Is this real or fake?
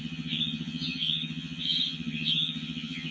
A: fake